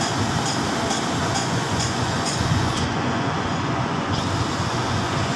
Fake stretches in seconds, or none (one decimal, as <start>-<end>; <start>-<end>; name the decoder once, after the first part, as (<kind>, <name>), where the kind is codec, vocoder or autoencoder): 1.2-4.2 (vocoder, Vocos); 4.7-5.4